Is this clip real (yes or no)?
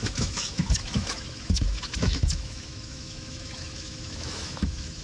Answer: no